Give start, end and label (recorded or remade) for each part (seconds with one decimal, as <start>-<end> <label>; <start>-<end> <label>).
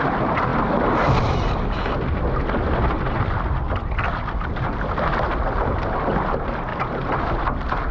0.0-6.7 recorded; 6.7-7.4 remade; 7.4-7.9 recorded